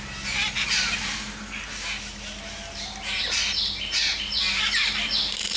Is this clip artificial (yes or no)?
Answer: no